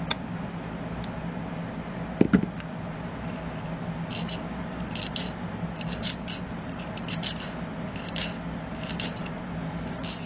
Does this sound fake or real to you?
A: real